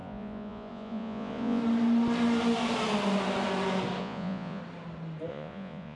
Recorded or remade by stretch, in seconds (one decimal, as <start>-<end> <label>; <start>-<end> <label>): 0.0-1.6 remade; 1.6-4.0 recorded; 4.0-4.6 remade; 4.6-5.3 recorded; 5.3-6.0 remade